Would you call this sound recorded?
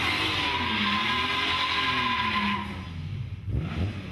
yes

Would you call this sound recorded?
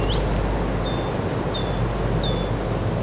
yes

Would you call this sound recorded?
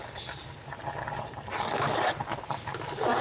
yes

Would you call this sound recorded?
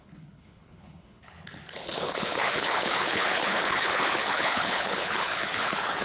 no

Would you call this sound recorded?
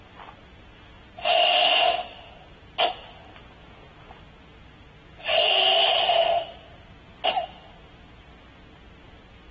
yes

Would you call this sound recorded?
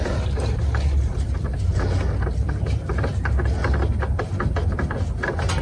yes